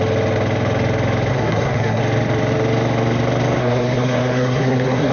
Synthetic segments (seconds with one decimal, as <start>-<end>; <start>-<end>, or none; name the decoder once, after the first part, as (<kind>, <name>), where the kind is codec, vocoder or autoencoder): 1.3-2.0 (codec, SNAC); 3.6-5.1